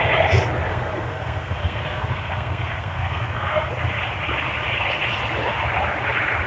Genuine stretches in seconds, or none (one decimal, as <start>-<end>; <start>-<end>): 0.0-0.7; 3.7-6.5